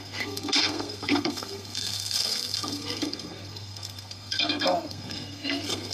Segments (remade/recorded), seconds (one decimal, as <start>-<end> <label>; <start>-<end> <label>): 0.0-5.9 remade